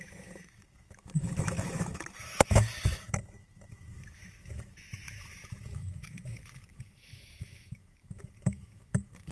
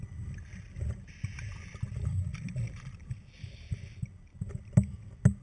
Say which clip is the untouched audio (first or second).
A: second